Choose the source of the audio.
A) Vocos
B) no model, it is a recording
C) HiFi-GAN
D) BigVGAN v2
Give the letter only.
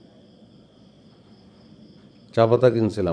A